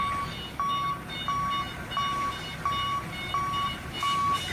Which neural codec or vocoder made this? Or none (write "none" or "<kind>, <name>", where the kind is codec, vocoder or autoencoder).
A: none